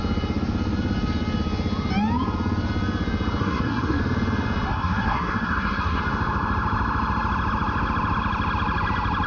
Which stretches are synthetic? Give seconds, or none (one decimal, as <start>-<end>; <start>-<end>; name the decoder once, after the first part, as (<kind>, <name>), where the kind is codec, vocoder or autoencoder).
3.4-4.0 (codec, SNAC); 4.7-6.0